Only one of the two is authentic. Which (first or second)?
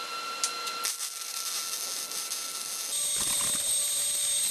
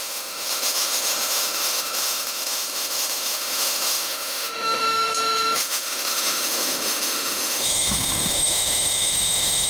first